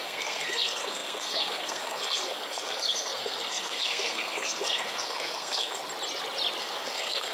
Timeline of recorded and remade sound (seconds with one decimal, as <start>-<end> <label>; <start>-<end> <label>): 0.0-5.8 remade; 5.8-6.6 recorded; 6.6-7.3 remade